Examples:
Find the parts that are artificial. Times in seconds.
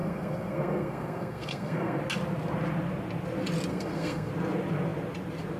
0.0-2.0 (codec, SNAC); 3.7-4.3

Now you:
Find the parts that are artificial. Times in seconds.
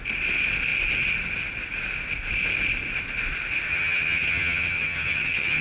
3.7-5.6 (vocoder, HiFi-GAN)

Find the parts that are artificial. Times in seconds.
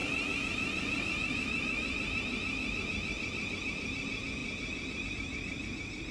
none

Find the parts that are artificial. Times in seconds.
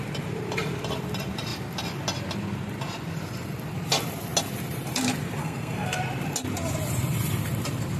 5.4-6.0 (codec, SNAC)